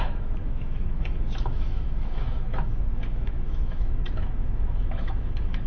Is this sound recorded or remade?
remade